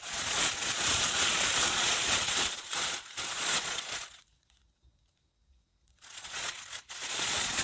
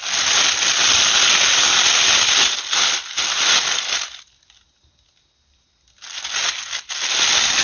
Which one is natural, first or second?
second